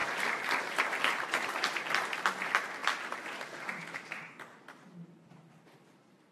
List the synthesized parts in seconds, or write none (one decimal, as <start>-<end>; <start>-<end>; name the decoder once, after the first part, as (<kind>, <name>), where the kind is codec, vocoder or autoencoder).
none